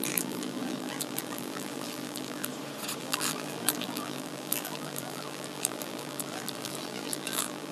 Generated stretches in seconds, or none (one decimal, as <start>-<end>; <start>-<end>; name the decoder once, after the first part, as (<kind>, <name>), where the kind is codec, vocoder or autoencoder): 0.0-2.5 (vocoder, BigVGAN v2); 3.0-7.7